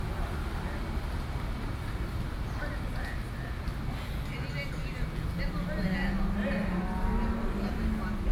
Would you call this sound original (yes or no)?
yes